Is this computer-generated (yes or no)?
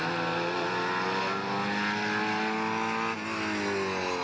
no